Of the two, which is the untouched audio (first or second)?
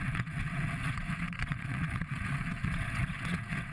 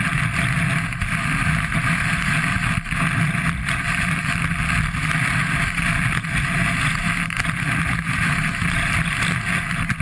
second